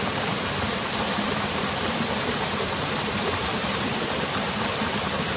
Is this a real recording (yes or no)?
no